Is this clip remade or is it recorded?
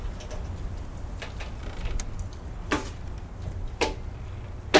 recorded